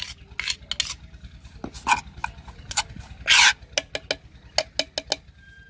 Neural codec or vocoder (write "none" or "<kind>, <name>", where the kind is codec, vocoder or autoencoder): none